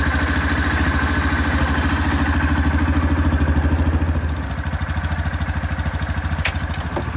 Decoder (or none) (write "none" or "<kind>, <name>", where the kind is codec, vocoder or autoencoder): none